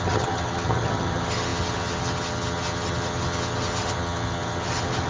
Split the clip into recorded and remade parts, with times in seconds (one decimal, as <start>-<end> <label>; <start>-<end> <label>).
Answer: 0.0-5.1 remade

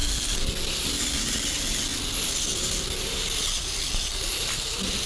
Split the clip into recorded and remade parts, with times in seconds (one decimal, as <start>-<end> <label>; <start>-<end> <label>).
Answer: 0.0-1.9 recorded; 1.9-3.8 remade; 3.8-5.1 recorded

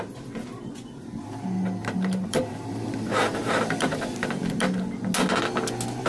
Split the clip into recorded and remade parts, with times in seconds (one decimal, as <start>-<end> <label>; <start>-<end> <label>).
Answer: 0.0-1.8 recorded; 1.8-4.3 remade; 4.3-6.1 recorded